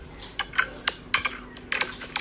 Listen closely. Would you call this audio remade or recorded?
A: recorded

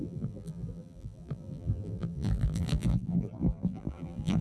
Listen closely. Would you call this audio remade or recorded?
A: remade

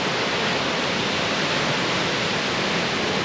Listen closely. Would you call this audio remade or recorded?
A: remade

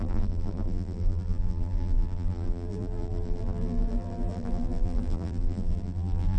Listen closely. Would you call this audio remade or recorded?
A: remade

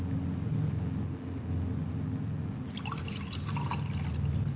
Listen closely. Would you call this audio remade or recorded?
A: recorded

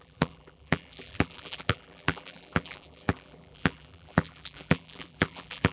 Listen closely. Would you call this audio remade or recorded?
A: remade